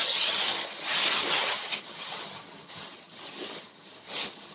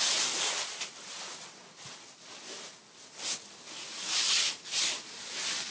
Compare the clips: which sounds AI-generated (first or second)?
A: first